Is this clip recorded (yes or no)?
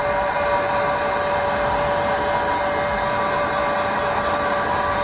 yes